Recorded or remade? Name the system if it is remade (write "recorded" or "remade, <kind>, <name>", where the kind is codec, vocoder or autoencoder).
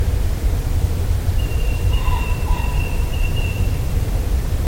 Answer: remade, vocoder, BigVGAN v2